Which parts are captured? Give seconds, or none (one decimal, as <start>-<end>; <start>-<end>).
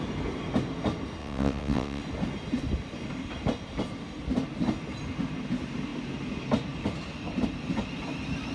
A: 0.0-1.2; 2.0-8.5